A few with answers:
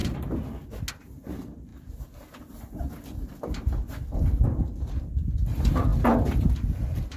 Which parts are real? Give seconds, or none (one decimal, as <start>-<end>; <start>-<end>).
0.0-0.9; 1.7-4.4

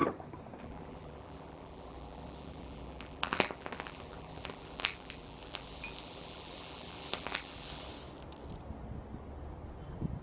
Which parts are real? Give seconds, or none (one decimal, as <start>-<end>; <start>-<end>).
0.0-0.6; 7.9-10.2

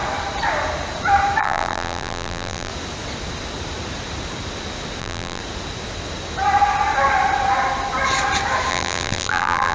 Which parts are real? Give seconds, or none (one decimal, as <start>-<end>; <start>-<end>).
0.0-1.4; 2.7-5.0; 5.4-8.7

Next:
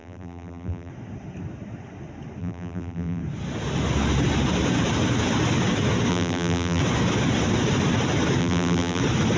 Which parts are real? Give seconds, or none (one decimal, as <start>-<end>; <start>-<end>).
0.9-2.4; 3.2-6.1; 6.8-8.4; 9.0-9.4